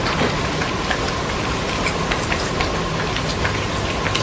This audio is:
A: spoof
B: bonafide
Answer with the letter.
B